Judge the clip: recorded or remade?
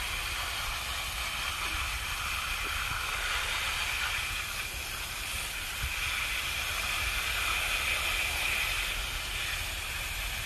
recorded